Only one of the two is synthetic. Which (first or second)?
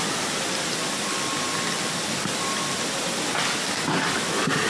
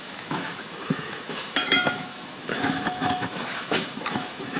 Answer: second